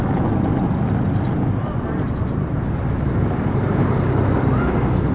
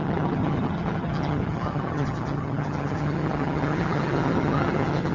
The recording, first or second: first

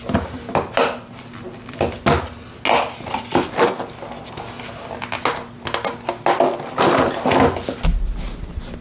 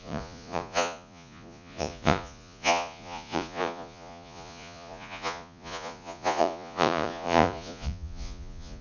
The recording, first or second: first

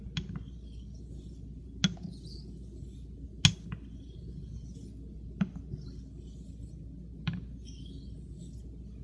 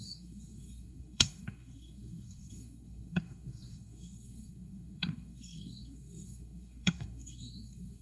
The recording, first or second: first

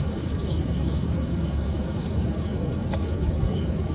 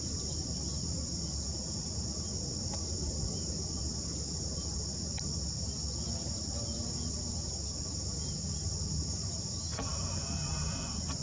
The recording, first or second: second